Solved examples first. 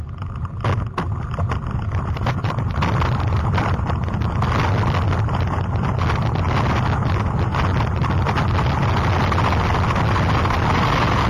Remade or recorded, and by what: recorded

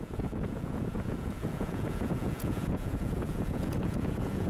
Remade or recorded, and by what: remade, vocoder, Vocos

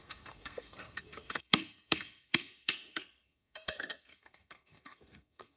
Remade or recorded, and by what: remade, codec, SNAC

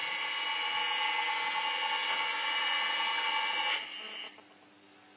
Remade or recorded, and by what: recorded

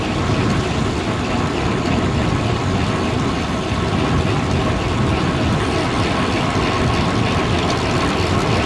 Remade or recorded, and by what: recorded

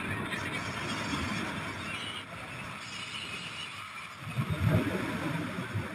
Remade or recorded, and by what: recorded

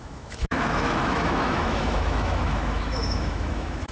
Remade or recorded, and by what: remade, autoencoder, DAC-VAE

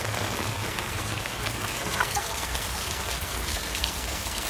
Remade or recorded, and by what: remade, codec, SNAC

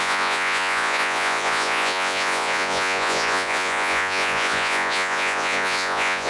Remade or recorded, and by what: remade, vocoder, Vocos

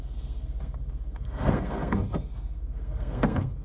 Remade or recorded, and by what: remade, codec, SNAC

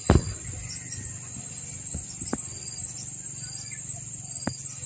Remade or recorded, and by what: recorded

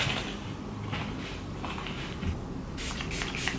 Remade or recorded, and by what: recorded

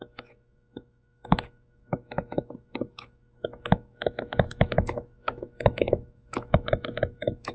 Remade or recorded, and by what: remade, autoencoder, DAC-VAE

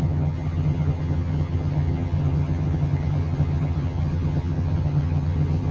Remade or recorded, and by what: remade, vocoder, HiFi-GAN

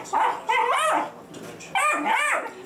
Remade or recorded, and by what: recorded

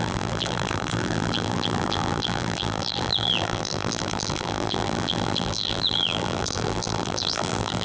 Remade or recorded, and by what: remade, vocoder, BigVGAN v2